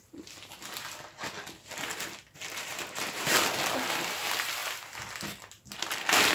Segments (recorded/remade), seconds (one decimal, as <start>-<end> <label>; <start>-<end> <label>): 0.0-2.4 recorded; 2.4-3.4 remade; 3.4-6.3 recorded